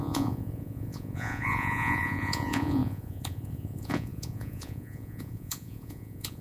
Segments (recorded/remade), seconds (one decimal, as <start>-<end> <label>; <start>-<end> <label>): 0.0-6.4 remade